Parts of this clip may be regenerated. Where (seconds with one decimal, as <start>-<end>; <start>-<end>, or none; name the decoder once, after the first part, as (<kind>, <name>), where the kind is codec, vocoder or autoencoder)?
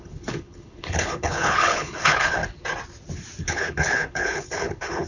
0.0-2.4 (codec, HILCodec); 3.4-5.1